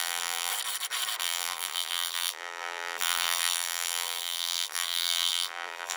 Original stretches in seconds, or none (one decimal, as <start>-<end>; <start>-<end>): 0.5-1.2